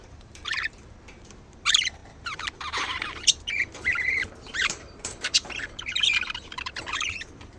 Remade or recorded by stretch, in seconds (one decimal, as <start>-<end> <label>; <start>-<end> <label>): 0.0-7.6 remade